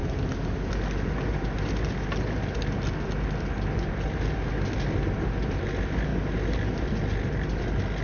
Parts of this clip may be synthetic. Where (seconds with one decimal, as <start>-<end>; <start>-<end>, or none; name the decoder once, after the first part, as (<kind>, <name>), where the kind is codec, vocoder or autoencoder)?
none